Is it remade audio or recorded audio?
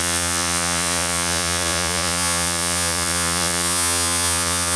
remade